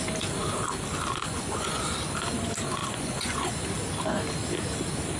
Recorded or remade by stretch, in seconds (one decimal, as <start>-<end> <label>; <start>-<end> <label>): 0.0-1.2 recorded; 1.2-1.8 remade; 1.8-2.8 recorded; 2.8-3.5 remade; 3.5-5.2 recorded